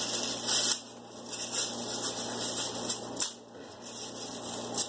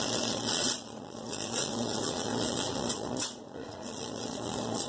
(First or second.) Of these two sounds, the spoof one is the second